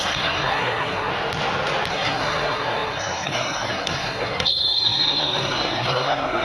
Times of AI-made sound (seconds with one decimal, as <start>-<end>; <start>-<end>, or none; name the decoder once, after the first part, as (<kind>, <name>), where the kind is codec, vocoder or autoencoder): 0.0-1.1 (codec, SNAC); 1.9-6.4